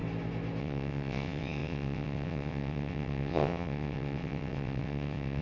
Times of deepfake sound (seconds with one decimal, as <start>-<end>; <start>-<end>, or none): 0.6-5.4